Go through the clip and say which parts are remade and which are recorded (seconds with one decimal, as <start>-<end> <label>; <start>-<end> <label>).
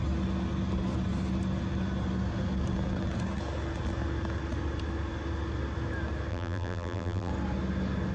0.0-6.3 recorded; 6.3-7.3 remade; 7.3-8.1 recorded